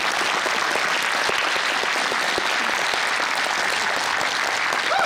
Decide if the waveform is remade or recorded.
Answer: recorded